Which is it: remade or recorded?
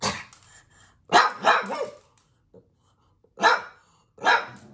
recorded